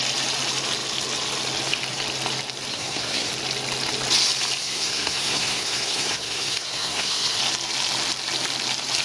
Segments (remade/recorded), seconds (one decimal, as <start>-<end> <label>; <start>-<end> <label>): 0.0-2.7 recorded; 2.7-3.3 remade; 3.3-4.6 recorded; 4.6-7.4 remade; 7.4-9.0 recorded